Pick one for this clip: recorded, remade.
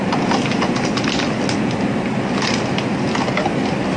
recorded